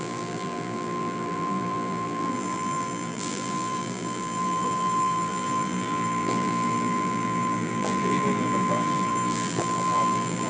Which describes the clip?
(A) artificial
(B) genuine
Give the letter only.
A